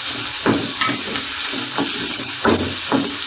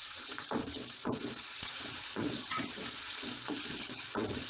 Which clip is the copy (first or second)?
second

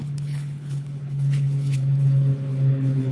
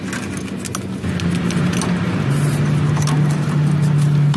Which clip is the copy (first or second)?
first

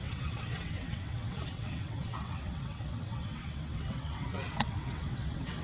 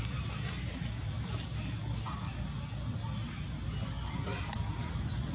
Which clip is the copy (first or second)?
first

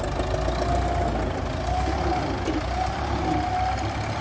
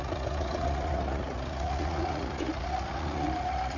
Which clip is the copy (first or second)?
second